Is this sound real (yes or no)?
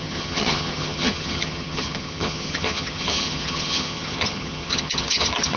no